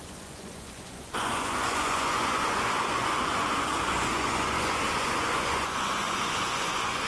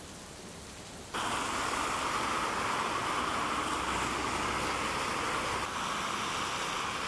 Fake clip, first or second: first